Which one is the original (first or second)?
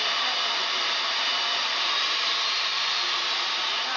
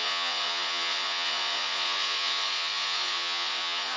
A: first